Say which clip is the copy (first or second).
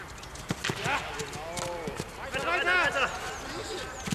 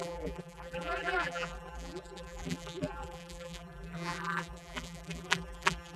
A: second